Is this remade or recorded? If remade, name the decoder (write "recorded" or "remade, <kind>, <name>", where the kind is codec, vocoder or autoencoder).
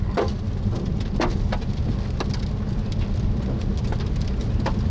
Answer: recorded